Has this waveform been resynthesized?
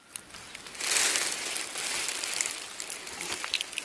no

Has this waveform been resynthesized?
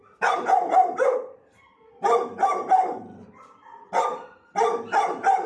no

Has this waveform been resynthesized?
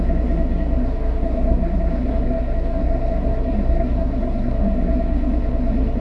yes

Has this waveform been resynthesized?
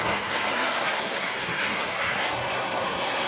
yes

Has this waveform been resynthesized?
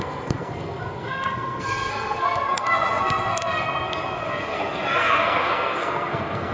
yes